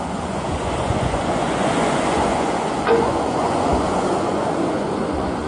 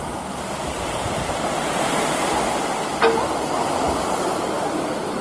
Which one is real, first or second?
second